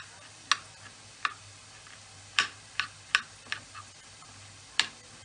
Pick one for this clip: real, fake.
real